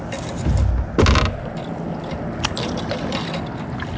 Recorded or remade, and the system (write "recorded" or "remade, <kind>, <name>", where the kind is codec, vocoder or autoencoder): recorded